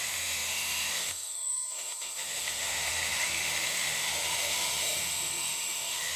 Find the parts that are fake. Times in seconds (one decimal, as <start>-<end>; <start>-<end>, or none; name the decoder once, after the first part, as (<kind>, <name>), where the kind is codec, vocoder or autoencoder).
0.0-6.2 (autoencoder, DAC-VAE)

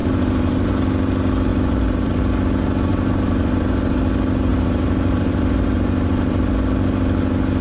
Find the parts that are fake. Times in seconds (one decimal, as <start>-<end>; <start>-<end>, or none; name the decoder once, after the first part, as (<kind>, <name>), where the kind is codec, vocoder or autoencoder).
0.0-0.7 (vocoder, BigVGAN v2); 1.5-2.2; 2.9-4.0; 4.5-6.5